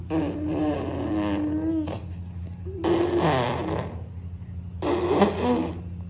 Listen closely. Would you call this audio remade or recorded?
recorded